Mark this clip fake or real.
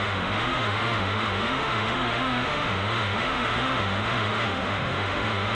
fake